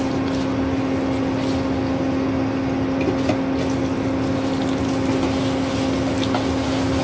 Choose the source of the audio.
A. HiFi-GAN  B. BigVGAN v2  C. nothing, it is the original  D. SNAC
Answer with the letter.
C